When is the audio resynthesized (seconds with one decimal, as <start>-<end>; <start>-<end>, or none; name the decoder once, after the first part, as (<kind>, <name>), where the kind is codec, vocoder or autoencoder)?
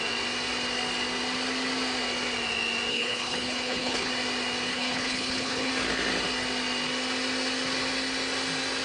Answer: 2.9-4.1 (codec, HILCodec); 4.7-5.7